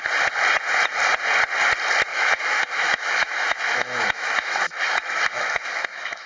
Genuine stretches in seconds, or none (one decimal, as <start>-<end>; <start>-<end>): 0.0-2.1